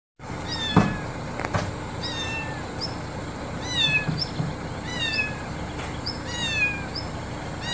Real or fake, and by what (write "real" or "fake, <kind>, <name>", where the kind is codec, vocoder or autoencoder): real